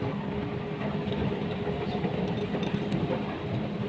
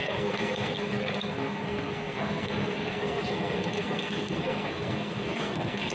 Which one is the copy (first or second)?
second